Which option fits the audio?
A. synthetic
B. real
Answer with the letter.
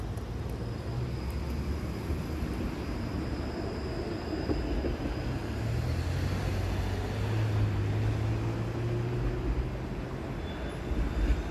B